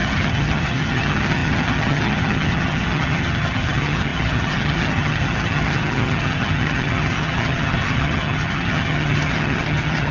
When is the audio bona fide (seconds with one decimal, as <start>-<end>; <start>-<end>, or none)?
none